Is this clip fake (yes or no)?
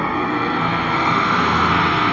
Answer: yes